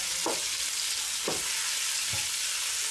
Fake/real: real